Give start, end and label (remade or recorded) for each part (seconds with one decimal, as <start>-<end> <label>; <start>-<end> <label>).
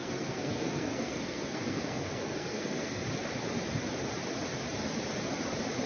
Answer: 0.0-3.0 remade; 3.0-5.9 recorded